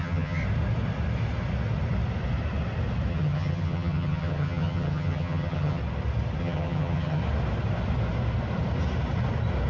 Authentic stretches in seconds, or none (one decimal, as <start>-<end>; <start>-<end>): 0.4-3.1; 5.8-6.4; 7.2-9.7

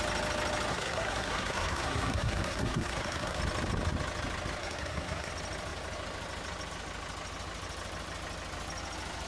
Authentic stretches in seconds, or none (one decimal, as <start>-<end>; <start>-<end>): 0.0-0.7; 3.4-4.6; 5.3-9.3